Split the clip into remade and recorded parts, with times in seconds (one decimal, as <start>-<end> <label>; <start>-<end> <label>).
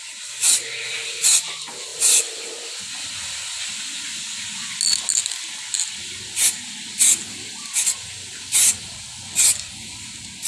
0.0-10.5 recorded